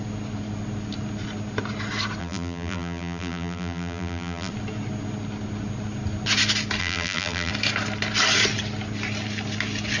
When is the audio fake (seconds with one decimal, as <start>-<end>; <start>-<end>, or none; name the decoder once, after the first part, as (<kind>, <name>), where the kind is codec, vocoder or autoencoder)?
2.2-4.5 (vocoder, BigVGAN v2); 6.8-7.5